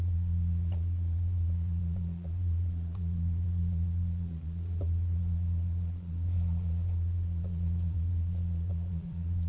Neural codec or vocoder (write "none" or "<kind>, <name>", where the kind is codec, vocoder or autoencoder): vocoder, Vocos